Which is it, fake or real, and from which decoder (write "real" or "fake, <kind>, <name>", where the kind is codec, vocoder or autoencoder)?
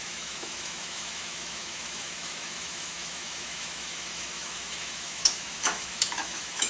fake, autoencoder, DAC-VAE